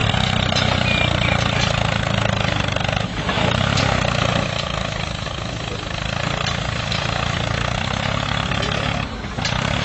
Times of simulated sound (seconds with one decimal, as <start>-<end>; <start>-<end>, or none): none